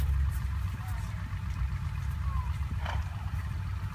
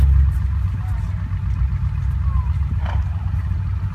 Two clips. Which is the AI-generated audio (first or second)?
first